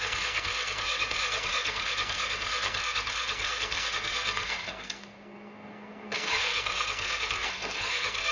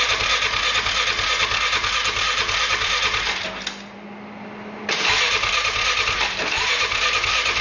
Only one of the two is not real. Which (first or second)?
first